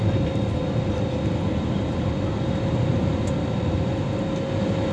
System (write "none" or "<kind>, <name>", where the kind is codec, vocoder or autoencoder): none